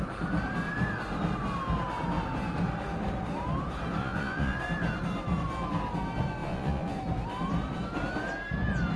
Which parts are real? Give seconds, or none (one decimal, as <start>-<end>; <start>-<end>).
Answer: 0.0-4.0; 4.6-6.4; 7.0-9.0